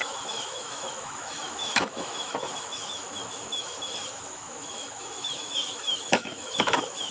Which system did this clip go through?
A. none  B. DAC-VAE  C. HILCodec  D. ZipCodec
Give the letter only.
B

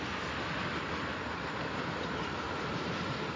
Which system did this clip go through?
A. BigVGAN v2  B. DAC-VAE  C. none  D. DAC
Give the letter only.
C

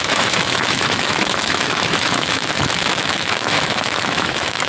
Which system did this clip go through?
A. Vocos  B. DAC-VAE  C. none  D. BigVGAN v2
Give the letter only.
B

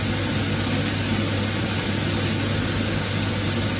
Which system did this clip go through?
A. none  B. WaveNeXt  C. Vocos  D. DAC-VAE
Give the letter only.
A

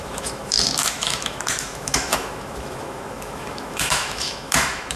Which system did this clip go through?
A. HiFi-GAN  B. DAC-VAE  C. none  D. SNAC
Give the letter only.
B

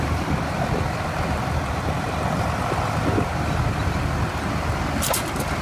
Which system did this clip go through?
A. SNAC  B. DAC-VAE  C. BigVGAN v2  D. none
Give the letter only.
D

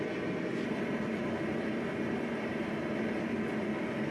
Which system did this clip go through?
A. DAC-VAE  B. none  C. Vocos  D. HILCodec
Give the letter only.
B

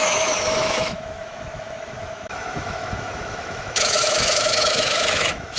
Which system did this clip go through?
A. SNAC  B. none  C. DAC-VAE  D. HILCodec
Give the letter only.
C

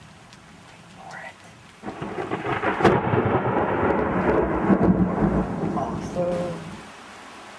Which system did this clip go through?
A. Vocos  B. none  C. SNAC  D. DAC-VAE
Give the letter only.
B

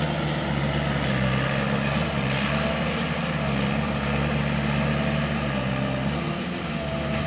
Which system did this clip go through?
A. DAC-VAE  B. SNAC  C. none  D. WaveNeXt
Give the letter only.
C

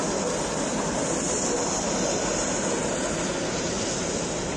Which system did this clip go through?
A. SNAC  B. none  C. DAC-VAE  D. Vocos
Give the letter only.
B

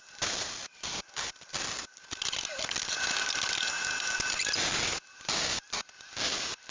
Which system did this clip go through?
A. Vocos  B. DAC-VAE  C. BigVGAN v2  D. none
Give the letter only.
D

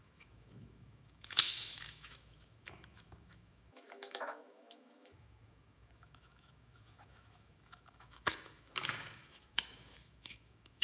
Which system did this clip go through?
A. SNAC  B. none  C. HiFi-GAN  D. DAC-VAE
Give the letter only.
D